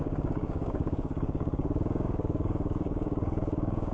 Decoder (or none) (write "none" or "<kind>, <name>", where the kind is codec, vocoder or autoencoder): codec, DAC